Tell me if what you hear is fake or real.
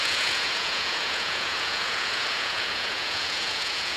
fake